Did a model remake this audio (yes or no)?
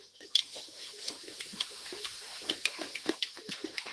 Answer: yes